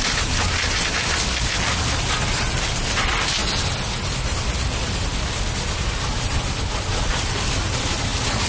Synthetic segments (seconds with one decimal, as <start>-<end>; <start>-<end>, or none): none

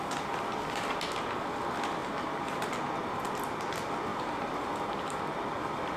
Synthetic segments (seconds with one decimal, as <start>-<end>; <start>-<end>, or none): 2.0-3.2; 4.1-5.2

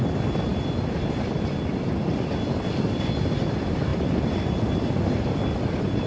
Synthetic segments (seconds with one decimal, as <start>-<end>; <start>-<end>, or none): none